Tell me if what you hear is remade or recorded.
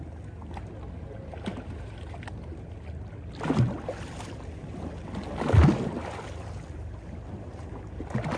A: recorded